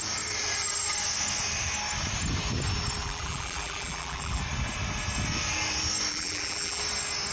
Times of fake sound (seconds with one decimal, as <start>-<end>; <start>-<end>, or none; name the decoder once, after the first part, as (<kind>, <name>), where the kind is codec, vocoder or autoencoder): 3.0-4.4 (vocoder, BigVGAN v2); 6.1-6.8